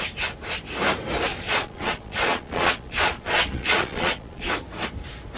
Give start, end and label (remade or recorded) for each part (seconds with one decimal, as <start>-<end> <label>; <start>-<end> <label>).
0.0-1.3 recorded; 1.3-4.5 remade; 4.5-5.4 recorded